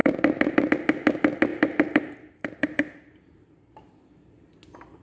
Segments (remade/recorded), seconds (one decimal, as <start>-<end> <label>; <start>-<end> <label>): 0.0-0.7 remade; 0.7-1.5 recorded; 1.5-4.5 remade; 4.5-5.0 recorded